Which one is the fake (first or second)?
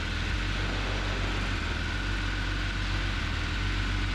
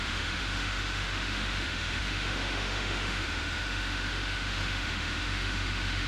second